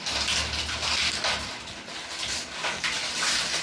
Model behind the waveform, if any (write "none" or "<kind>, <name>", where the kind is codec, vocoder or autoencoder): none